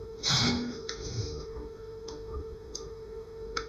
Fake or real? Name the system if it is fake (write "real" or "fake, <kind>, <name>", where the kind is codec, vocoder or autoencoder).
fake, autoencoder, DAC-VAE